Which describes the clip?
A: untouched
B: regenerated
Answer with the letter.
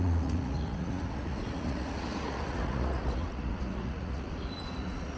B